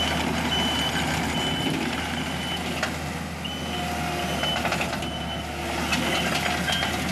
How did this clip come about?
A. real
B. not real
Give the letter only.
A